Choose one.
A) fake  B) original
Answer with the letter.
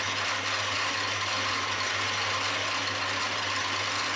B